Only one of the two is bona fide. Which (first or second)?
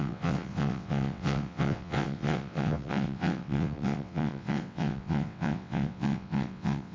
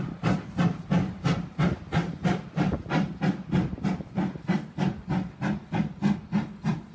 second